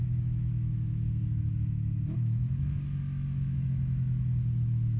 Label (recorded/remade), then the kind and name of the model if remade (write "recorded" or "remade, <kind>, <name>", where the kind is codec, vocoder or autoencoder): remade, autoencoder, DAC-VAE